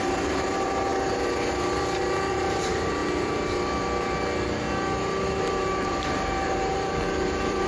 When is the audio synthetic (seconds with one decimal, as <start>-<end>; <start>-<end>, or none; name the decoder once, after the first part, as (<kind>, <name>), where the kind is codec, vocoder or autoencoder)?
0.0-0.9 (vocoder, BigVGAN v2); 2.3-3.0; 5.4-7.7